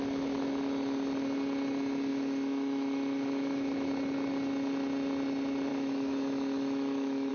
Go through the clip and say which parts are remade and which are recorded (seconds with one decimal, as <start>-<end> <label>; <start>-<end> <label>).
0.0-2.1 recorded; 2.1-3.9 remade; 3.9-5.7 recorded; 5.7-7.3 remade